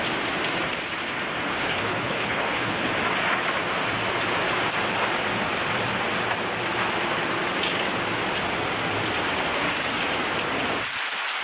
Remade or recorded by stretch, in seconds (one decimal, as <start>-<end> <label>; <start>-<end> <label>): 0.0-1.5 recorded; 1.5-2.9 remade; 2.9-11.4 recorded

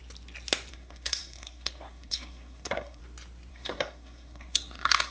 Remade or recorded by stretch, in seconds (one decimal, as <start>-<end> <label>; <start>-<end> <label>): 0.0-0.7 recorded; 0.7-3.0 remade; 3.0-3.5 recorded; 3.5-5.1 remade

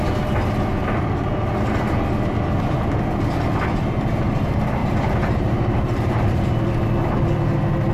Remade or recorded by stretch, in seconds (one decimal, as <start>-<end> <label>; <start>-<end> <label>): 0.0-4.8 recorded; 4.8-6.6 remade; 6.6-7.9 recorded

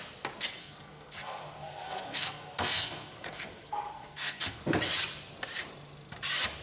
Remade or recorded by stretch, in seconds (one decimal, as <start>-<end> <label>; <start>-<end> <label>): 0.0-0.6 recorded; 0.6-4.6 remade; 4.6-6.6 recorded

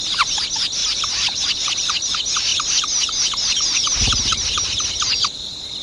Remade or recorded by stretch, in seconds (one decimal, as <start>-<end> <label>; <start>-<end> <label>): 0.0-0.8 recorded; 0.8-1.7 remade; 1.7-5.8 recorded

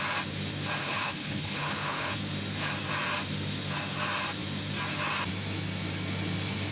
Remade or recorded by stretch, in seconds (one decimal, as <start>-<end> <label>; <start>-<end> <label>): 0.0-0.8 recorded; 0.8-2.2 remade; 2.2-6.7 recorded